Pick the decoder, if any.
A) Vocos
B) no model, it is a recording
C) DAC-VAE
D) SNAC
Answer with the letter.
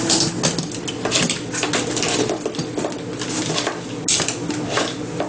B